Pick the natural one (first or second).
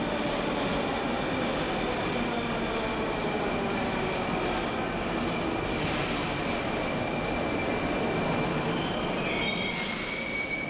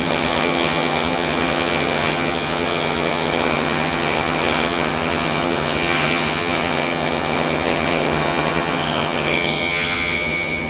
first